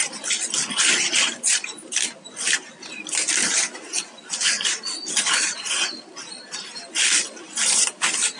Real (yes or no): yes